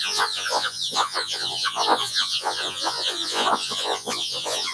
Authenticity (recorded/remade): remade